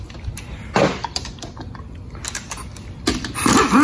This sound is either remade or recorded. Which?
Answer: recorded